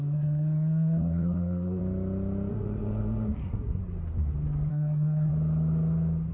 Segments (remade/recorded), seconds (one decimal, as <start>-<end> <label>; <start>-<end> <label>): 0.0-1.8 remade; 1.8-2.5 recorded; 2.5-3.8 remade; 3.8-4.7 recorded; 4.7-5.3 remade; 5.3-6.3 recorded